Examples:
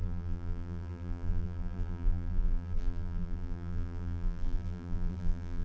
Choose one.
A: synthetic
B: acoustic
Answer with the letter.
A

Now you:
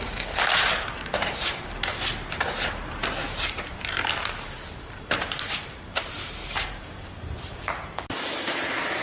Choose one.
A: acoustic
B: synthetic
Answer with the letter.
B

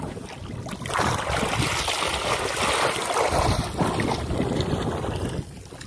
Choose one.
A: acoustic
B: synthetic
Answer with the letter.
A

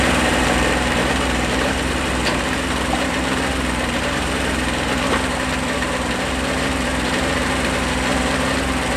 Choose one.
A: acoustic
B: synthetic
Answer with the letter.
B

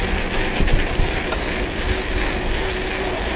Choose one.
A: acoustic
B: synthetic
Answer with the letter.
A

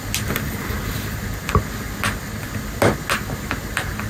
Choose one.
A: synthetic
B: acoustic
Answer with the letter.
B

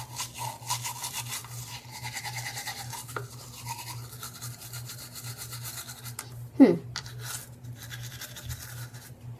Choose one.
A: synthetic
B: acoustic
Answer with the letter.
B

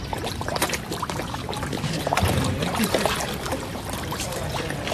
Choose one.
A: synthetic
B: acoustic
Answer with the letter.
A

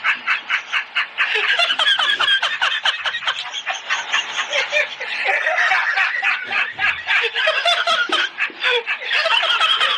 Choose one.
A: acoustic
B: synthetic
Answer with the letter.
B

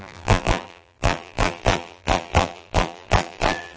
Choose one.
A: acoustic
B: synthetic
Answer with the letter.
B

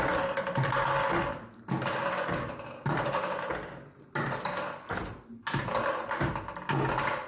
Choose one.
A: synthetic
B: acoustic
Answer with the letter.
B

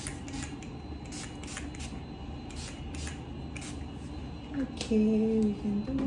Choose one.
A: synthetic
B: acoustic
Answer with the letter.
B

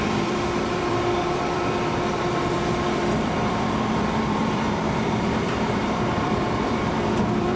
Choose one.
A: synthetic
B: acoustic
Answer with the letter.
A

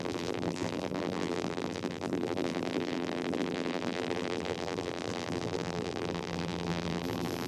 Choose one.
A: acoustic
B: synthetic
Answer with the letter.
B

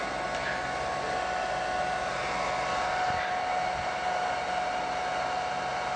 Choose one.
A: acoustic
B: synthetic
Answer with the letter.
A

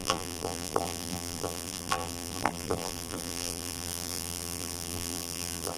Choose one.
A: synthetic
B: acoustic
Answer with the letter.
A